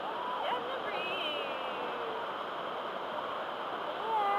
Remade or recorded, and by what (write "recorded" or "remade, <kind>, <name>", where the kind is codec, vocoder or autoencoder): recorded